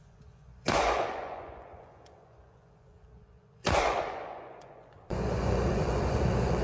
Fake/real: fake